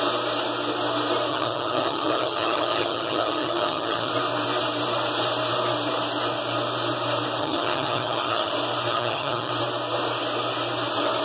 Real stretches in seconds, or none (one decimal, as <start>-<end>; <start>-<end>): 0.0-1.3; 4.1-7.4; 8.5-8.9; 9.5-11.2